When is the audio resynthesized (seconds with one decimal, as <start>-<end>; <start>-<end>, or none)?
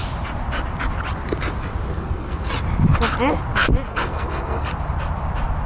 1.9-2.5; 3.9-4.7